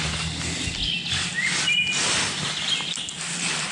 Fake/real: real